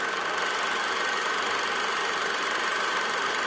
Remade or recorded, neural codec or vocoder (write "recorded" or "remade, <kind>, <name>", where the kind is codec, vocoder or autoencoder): recorded